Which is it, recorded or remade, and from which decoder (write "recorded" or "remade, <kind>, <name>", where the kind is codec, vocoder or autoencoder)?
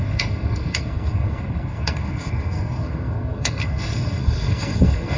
remade, codec, SNAC